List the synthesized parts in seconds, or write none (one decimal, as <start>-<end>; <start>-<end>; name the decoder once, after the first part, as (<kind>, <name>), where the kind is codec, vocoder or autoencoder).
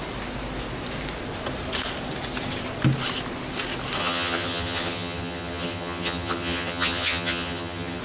4.0-8.0 (vocoder, HiFi-GAN)